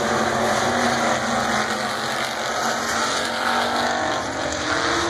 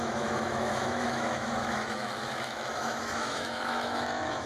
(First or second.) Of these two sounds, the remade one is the second